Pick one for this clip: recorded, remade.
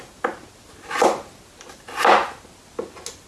recorded